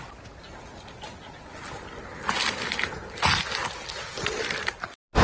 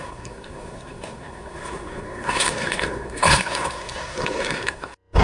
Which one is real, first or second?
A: first